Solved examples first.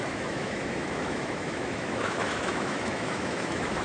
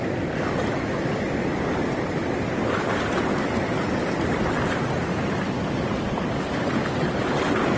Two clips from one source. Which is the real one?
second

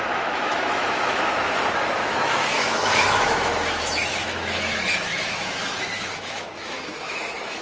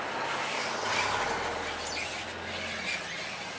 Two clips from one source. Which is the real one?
second